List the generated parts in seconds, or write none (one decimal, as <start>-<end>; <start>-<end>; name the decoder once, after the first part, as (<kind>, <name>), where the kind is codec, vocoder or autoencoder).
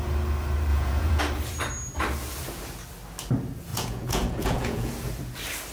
0.7-1.2 (vocoder, Vocos); 3.7-4.9